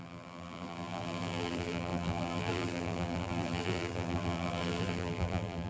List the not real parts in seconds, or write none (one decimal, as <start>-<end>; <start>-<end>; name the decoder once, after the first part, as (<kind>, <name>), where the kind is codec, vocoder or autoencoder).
0.0-5.7 (vocoder, BigVGAN v2)